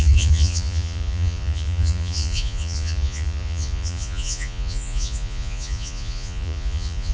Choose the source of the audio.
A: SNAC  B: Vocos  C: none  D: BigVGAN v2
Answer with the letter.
B